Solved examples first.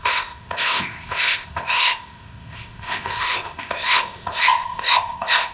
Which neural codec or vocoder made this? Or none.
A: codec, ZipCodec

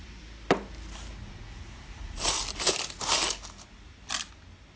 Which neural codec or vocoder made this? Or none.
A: none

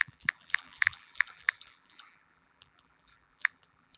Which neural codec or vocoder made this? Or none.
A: vocoder, BigVGAN v2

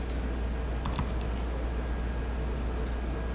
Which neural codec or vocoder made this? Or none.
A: none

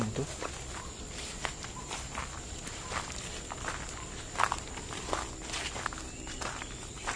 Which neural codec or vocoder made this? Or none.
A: none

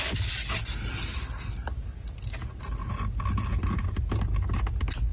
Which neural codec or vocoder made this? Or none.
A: none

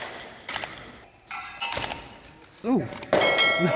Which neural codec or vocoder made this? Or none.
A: none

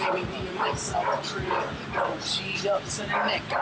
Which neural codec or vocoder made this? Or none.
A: none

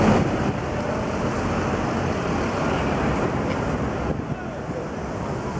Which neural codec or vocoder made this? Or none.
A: none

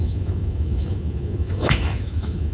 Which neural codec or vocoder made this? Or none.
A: autoencoder, DAC-VAE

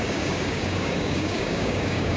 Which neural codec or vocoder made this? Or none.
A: codec, DAC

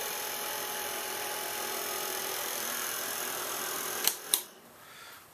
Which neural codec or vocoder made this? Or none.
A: vocoder, BigVGAN v2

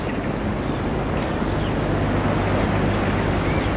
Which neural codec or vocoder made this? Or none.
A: none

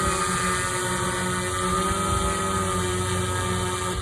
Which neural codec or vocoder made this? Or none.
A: none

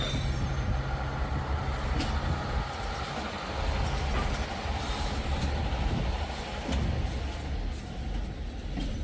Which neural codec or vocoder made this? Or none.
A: none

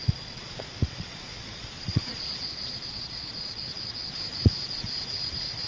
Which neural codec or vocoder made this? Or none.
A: vocoder, Vocos